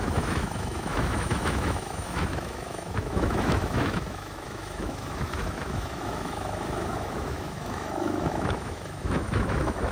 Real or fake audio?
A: fake